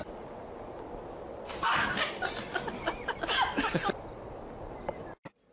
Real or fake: real